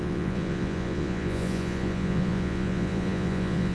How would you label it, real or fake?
fake